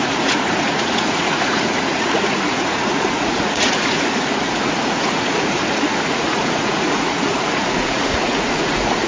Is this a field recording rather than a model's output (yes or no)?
no